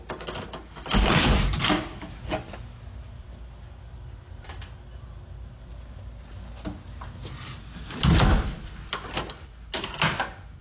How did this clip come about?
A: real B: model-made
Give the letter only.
A